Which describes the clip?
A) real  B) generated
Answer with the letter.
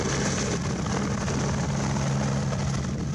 A